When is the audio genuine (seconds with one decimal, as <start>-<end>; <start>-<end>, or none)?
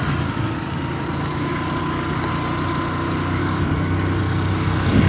0.0-1.5; 2.3-3.4; 4.2-5.1